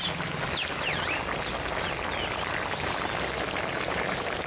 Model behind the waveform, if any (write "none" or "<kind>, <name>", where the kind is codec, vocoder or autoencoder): none